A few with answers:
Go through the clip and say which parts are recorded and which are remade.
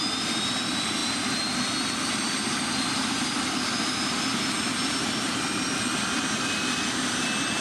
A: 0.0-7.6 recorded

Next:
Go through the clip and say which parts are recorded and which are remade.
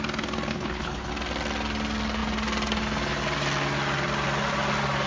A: 0.0-0.5 recorded; 0.5-1.1 remade; 1.1-5.1 recorded